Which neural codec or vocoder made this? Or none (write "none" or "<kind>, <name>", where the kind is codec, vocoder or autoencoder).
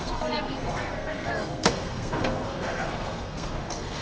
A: codec, SNAC